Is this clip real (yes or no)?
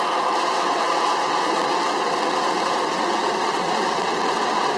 no